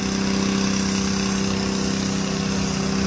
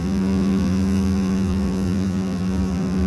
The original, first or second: first